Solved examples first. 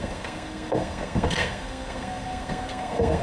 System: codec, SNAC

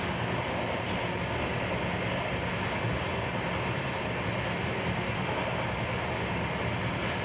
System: none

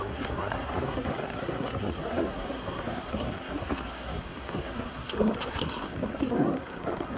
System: codec, SNAC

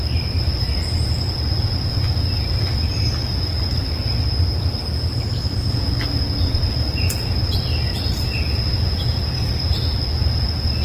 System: none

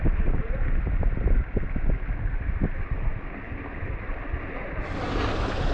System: none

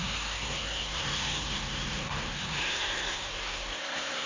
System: codec, SNAC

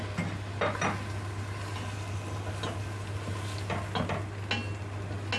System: none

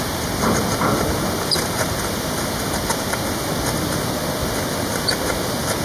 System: none